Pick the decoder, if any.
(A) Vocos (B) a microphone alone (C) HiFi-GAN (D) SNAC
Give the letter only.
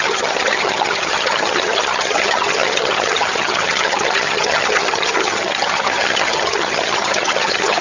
C